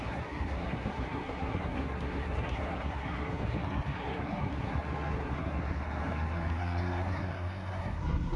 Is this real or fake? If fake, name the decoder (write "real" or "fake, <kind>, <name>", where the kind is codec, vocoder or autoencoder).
fake, codec, SNAC